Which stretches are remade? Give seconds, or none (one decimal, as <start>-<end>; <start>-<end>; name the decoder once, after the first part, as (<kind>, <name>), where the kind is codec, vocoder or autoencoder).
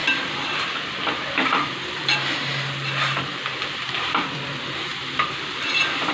0.0-2.5 (vocoder, BigVGAN v2); 3.9-6.1